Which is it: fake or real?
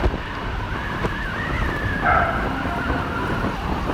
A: real